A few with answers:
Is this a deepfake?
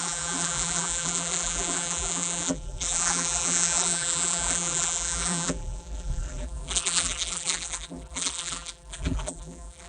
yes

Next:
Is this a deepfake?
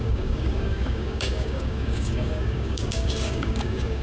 yes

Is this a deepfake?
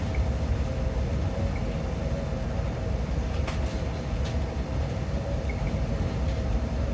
no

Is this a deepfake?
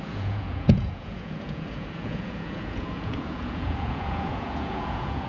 yes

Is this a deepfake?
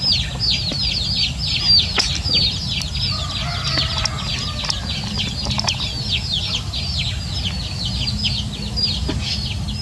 no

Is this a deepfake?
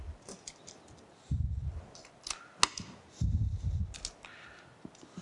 no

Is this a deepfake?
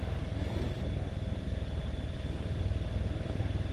yes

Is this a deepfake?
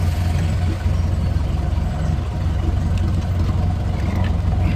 no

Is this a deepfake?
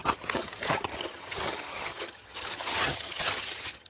yes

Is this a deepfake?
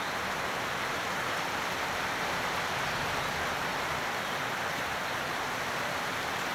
no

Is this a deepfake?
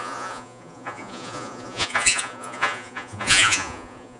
yes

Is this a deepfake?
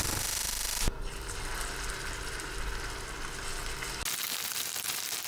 no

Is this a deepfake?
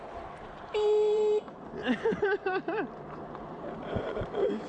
yes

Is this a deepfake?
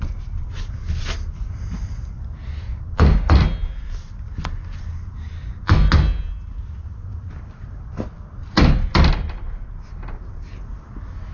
no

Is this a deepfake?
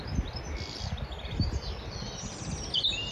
no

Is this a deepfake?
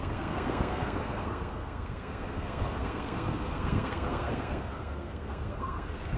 yes